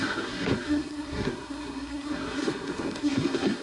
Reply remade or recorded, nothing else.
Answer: remade